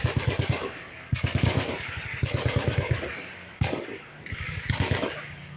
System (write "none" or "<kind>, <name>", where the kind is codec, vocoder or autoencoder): codec, DAC